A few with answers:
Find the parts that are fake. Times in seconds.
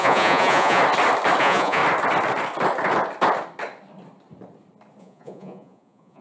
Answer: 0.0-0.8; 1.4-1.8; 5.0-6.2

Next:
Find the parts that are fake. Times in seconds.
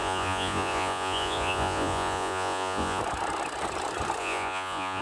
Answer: 0.0-3.0; 4.2-5.0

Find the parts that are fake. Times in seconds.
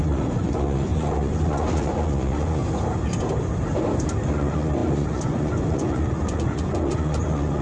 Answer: 0.0-2.6; 4.3-7.6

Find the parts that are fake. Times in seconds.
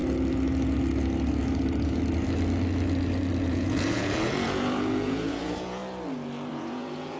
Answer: 3.4-5.8; 6.5-7.2